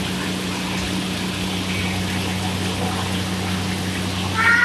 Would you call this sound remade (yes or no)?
no